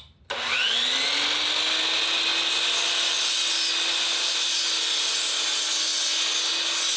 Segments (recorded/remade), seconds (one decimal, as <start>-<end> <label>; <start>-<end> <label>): 0.0-7.0 recorded